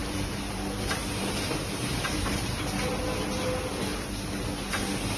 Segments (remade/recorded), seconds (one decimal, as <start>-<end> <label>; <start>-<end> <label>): 0.0-2.8 remade; 2.8-5.2 recorded

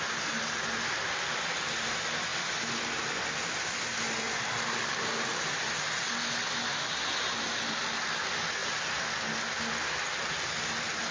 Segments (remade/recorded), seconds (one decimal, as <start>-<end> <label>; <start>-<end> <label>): 0.0-11.1 recorded